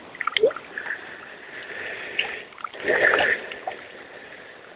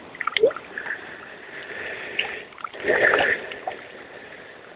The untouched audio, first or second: first